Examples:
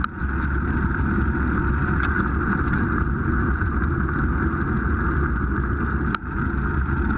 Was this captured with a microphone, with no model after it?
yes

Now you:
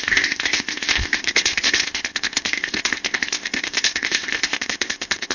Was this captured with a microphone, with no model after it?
no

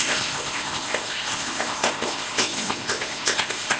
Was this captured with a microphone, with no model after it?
no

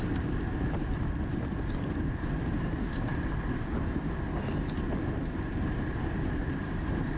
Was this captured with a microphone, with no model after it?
yes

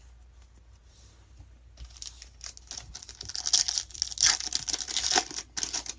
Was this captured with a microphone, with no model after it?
yes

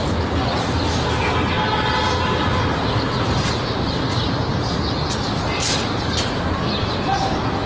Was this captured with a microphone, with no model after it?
yes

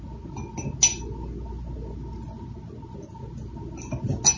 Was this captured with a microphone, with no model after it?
yes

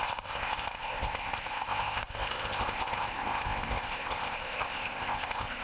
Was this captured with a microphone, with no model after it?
no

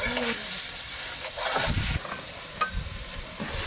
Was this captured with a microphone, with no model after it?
yes